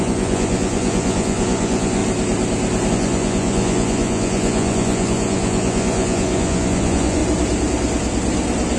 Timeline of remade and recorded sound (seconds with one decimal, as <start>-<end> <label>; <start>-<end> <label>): 0.0-2.0 remade; 2.0-2.9 recorded; 2.9-7.2 remade; 7.2-8.8 recorded